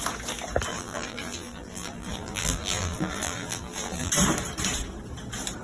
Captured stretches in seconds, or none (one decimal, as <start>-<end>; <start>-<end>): 0.0-0.7; 4.1-5.6